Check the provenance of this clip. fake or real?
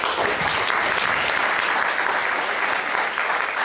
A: real